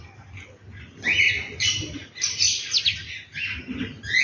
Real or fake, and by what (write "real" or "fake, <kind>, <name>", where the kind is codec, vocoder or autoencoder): real